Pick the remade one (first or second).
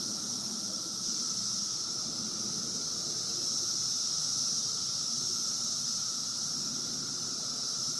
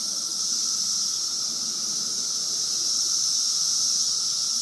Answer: first